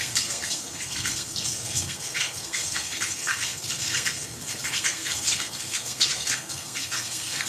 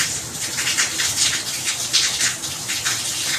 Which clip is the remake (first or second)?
first